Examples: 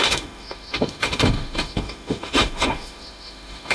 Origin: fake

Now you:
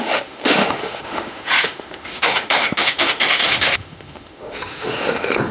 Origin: fake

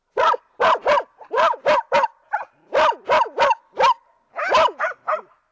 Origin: real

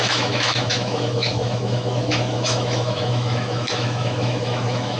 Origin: fake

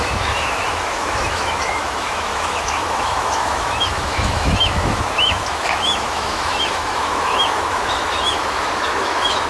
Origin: fake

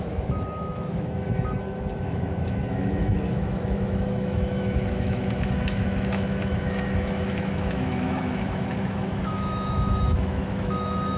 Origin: fake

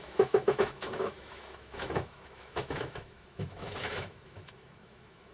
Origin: fake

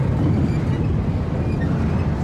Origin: real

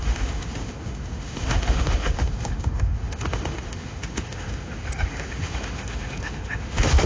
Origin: fake